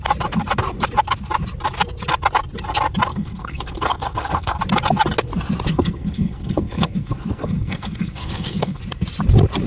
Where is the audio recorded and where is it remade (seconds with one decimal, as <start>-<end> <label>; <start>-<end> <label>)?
0.0-3.1 recorded; 3.1-4.6 remade; 4.6-5.7 recorded; 5.7-8.8 remade; 8.8-9.7 recorded